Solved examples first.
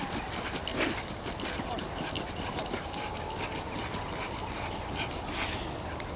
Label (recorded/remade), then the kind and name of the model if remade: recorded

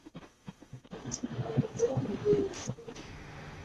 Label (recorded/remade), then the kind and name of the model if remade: remade, autoencoder, DAC-VAE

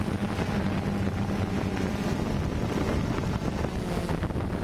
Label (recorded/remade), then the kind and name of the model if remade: recorded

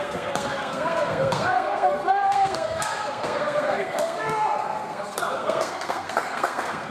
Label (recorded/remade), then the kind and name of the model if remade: remade, codec, SNAC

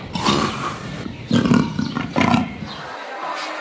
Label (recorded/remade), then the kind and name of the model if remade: recorded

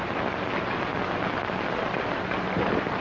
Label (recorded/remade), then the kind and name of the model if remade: recorded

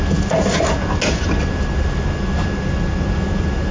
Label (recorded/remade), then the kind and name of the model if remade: recorded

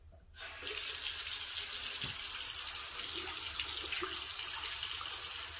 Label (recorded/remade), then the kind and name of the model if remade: recorded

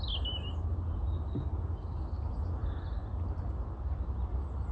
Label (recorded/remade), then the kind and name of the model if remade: recorded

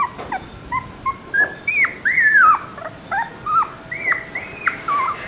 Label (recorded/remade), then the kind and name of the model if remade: remade, vocoder, BigVGAN v2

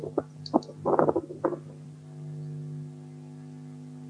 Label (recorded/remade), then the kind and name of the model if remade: recorded